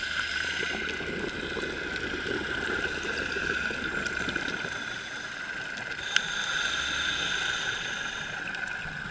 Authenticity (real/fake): real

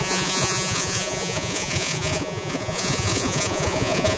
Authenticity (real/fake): fake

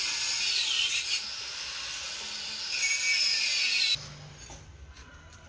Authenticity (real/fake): real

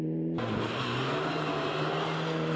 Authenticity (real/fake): real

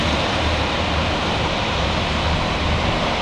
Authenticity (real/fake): fake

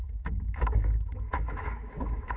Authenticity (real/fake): fake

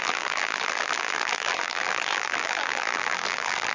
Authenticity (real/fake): fake